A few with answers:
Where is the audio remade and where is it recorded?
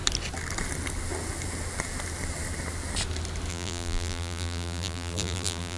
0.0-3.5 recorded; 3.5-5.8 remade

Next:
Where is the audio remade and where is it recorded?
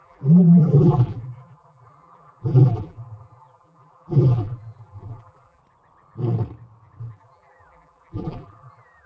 0.0-5.6 remade; 5.6-7.0 recorded; 7.0-9.1 remade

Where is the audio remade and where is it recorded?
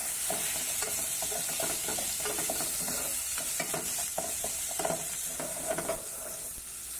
0.0-0.9 remade; 0.9-1.9 recorded; 1.9-5.8 remade; 5.8-7.0 recorded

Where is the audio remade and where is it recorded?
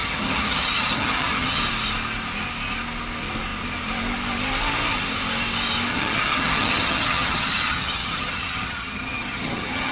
0.0-1.6 remade; 1.6-5.9 recorded; 5.9-9.9 remade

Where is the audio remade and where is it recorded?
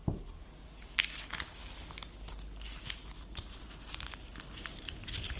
0.0-5.4 recorded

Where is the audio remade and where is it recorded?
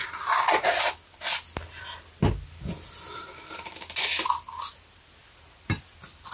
0.0-5.2 recorded; 5.2-5.8 remade; 5.8-6.3 recorded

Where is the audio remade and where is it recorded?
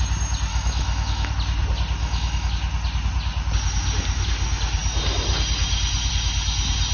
0.0-0.5 recorded; 0.5-1.3 remade; 1.3-2.0 recorded; 2.0-2.5 remade; 2.5-6.9 recorded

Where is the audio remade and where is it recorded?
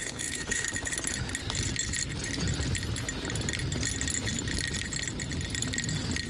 0.0-0.7 remade; 0.7-6.3 recorded